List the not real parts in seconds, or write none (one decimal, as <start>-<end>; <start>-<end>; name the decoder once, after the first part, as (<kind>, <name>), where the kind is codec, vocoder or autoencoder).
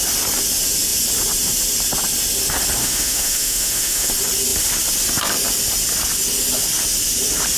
2.8-4.1 (autoencoder, DAC-VAE)